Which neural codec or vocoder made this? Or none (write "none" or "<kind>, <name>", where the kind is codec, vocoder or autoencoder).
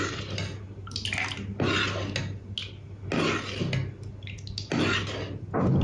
none